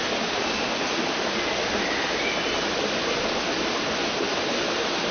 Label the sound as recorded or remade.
recorded